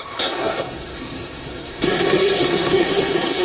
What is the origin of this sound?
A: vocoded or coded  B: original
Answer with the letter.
A